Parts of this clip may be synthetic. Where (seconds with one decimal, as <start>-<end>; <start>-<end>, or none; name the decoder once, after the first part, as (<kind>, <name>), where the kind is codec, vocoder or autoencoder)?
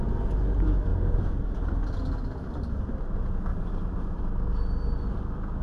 3.5-4.2 (vocoder, BigVGAN v2)